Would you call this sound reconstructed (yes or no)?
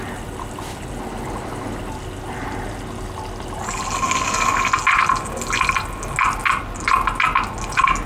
no